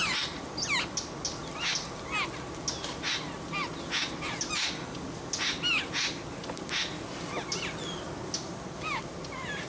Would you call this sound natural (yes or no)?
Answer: yes